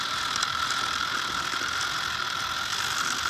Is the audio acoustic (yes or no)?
yes